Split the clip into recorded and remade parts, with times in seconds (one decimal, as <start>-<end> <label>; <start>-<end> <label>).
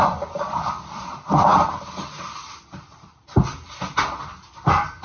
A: 0.0-5.0 recorded